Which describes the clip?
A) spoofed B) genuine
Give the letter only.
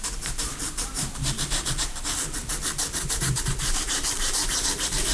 A